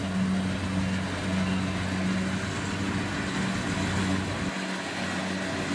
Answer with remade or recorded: recorded